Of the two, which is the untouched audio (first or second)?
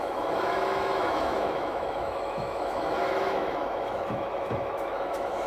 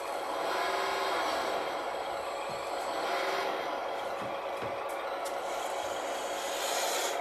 second